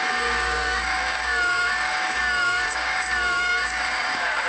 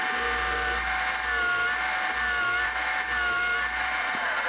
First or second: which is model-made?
first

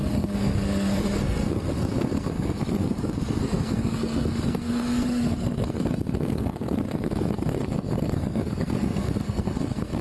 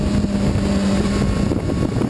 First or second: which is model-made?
first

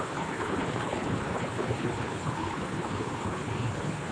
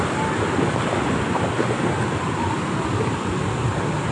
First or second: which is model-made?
first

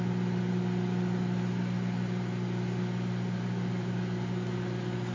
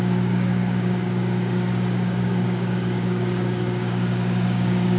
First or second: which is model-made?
second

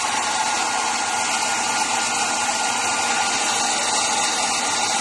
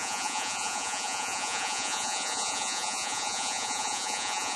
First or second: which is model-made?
second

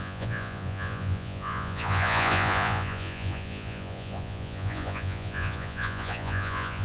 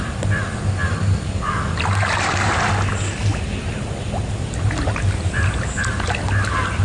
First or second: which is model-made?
first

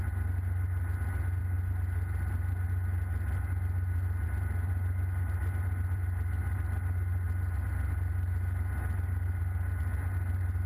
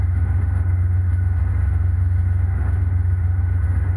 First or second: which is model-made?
second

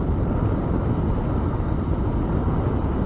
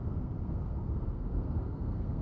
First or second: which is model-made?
second